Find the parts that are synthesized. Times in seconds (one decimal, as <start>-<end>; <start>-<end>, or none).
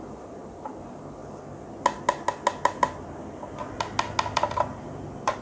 0.0-1.2; 4.4-5.4